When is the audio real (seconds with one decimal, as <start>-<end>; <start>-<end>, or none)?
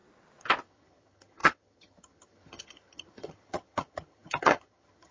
0.0-0.6